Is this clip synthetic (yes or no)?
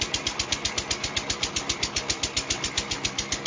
no